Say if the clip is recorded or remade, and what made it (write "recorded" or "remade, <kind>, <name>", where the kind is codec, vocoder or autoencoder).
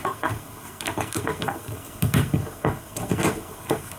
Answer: remade, codec, SNAC